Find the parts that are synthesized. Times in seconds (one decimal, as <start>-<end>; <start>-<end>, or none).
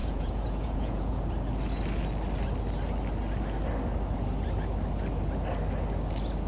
0.0-1.2